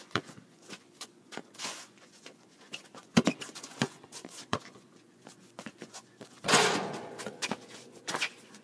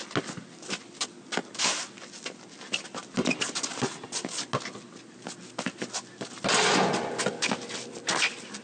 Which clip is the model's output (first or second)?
first